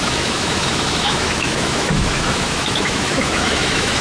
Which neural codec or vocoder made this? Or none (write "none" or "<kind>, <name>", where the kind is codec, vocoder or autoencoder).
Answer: autoencoder, DAC-VAE